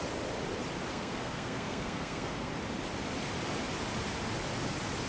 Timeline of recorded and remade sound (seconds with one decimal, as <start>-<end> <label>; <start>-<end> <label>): 0.0-0.9 recorded; 0.9-2.5 remade; 2.5-5.1 recorded